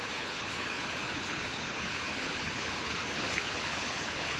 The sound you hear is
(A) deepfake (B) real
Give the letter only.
A